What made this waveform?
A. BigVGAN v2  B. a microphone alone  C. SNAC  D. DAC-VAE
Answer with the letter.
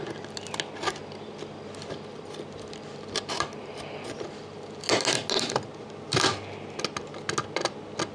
B